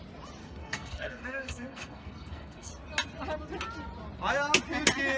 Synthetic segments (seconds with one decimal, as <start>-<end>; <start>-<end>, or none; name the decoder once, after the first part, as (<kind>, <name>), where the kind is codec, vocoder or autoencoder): 0.4-2.7 (codec, SNAC)